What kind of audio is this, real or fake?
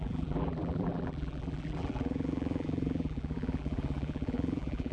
fake